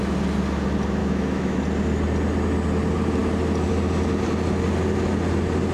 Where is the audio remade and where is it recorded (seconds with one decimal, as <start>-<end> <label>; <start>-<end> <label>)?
0.0-1.0 recorded; 1.0-1.6 remade; 1.6-5.7 recorded